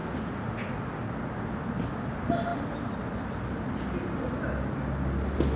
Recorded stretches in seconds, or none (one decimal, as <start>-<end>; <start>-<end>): 0.0-5.6